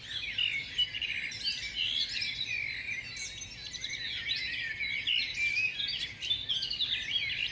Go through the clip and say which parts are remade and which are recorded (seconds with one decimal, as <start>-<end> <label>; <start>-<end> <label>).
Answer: 0.0-7.5 recorded